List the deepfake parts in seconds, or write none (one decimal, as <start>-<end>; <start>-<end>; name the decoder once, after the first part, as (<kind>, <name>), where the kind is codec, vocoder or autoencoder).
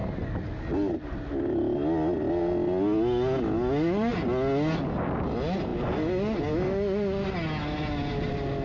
none